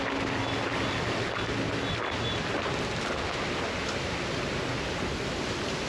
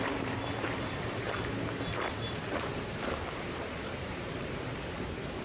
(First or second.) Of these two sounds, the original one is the first